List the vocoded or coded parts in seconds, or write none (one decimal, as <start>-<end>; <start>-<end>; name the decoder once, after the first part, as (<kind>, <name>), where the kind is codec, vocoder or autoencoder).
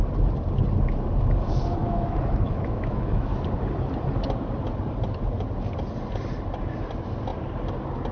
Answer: 1.8-3.3 (autoencoder, DAC-VAE)